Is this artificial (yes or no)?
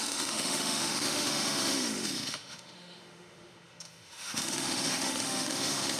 yes